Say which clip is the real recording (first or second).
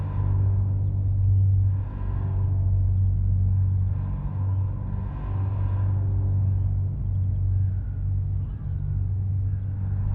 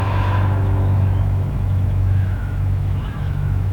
first